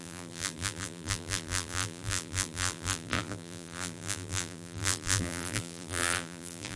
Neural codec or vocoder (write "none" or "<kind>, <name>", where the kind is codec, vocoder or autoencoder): vocoder, BigVGAN v2